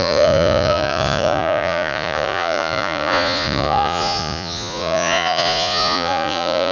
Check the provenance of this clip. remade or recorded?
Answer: remade